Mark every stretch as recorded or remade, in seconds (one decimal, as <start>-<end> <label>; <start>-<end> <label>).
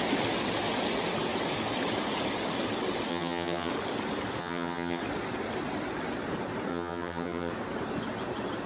0.0-3.1 recorded; 3.1-3.7 remade; 3.7-4.4 recorded; 4.4-5.0 remade; 5.0-6.7 recorded; 6.7-7.5 remade; 7.5-8.7 recorded